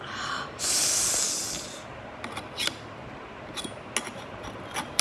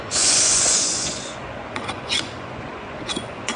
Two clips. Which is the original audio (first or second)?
first